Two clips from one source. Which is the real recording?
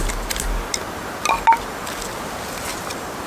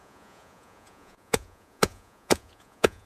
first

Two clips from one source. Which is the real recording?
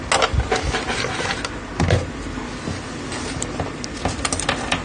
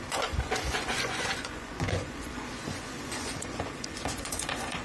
first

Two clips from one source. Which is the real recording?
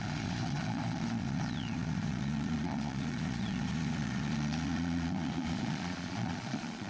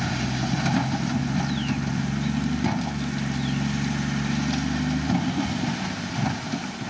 second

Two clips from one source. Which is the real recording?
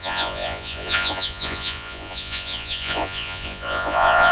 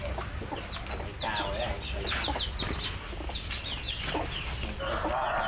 second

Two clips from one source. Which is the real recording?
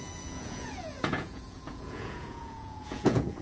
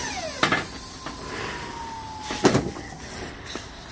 second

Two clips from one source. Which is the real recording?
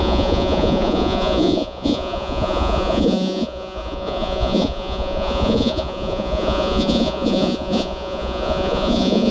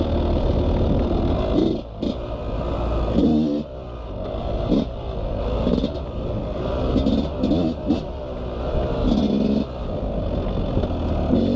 second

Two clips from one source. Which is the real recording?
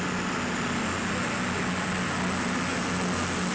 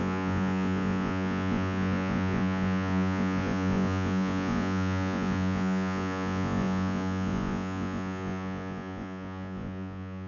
first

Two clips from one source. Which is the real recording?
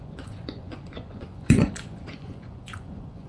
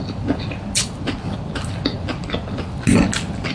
second